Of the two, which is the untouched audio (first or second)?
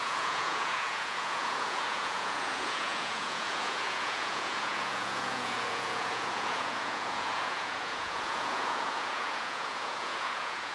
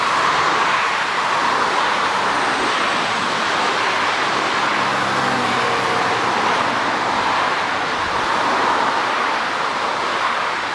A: second